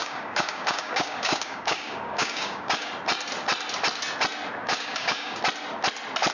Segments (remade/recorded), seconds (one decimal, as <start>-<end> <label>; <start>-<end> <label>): 0.0-2.9 remade; 2.9-4.6 recorded; 4.6-5.4 remade; 5.4-6.3 recorded